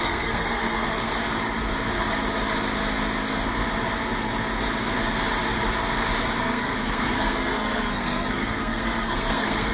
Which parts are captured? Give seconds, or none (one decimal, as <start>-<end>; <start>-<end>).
1.2-6.4